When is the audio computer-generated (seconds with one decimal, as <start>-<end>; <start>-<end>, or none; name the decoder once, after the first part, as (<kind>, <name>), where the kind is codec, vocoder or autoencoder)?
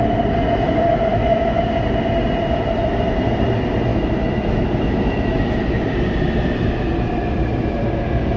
1.1-1.7 (autoencoder, DAC-VAE); 3.9-5.6